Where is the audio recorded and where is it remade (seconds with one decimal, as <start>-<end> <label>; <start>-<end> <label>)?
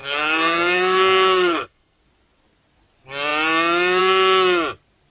0.0-2.0 remade; 2.0-5.1 recorded